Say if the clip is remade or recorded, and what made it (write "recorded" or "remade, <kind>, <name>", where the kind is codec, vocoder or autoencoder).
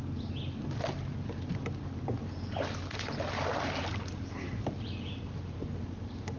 recorded